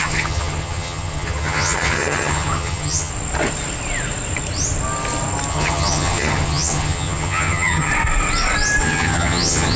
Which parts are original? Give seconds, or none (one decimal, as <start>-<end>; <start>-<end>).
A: 3.1-5.5; 7.9-8.8